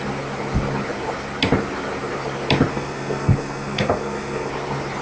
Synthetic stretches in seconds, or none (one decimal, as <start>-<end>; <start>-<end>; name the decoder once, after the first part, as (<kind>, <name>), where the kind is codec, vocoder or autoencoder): 2.7-4.5 (codec, SNAC)